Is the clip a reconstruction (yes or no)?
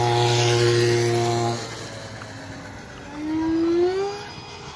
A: no